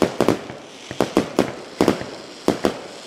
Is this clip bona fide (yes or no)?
yes